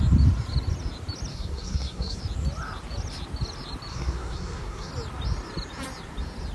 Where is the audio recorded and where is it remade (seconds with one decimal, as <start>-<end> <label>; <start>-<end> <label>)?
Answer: 0.0-1.3 recorded; 1.3-2.2 remade; 2.2-3.9 recorded; 3.9-4.9 remade; 4.9-6.5 recorded